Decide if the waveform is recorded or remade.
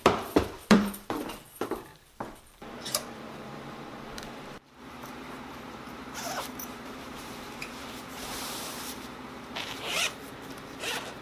remade